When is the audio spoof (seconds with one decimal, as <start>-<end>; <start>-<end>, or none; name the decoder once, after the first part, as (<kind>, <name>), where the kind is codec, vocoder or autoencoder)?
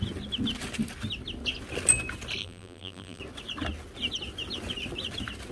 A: 2.4-3.2 (vocoder, BigVGAN v2)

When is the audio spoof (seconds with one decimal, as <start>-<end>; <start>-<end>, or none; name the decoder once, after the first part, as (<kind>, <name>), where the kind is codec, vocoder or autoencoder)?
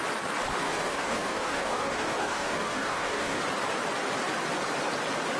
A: 0.6-3.4 (codec, DAC)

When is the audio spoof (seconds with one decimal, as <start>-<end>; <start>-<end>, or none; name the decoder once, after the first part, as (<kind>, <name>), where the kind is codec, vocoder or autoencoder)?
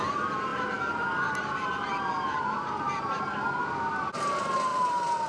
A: 0.5-3.7 (vocoder, BigVGAN v2); 4.7-5.3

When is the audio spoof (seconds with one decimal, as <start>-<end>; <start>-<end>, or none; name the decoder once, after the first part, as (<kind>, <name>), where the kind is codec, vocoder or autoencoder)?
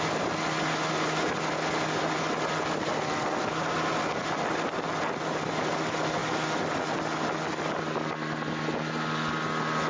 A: none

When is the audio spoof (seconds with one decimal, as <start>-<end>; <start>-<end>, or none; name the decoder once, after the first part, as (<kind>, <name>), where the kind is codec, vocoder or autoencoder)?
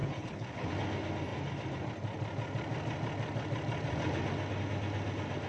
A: 0.0-0.7 (codec, HILCodec)